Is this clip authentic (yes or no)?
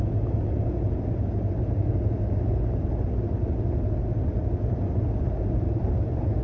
yes